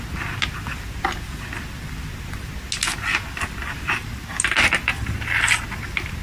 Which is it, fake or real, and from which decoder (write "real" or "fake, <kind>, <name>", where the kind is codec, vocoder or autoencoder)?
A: real